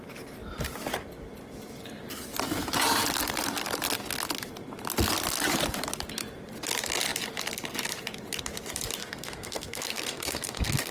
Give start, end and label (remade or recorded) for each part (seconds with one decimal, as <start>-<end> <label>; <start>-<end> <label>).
0.0-9.0 recorded; 9.0-10.9 remade